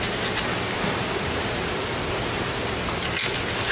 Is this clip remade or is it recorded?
recorded